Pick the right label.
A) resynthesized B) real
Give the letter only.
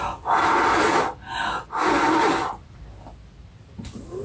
B